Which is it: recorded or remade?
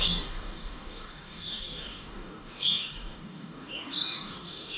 remade